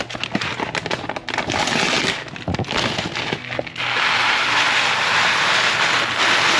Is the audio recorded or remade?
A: recorded